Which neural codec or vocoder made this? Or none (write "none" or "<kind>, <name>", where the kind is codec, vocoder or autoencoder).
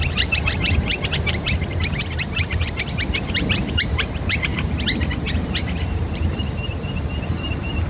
vocoder, BigVGAN v2